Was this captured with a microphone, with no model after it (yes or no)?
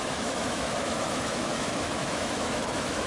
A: no